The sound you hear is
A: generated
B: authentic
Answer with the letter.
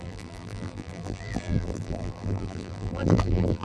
A